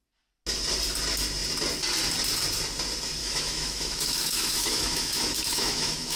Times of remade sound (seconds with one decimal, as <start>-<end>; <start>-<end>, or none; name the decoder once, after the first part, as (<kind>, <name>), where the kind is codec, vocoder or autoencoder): 3.2-6.2 (autoencoder, DAC-VAE)